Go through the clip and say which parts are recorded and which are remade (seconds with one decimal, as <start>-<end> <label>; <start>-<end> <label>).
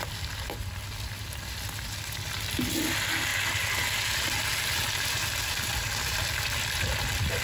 0.0-7.4 recorded